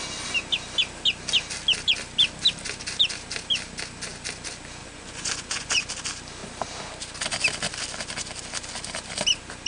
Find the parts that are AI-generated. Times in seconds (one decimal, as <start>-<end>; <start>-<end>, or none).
4.8-5.9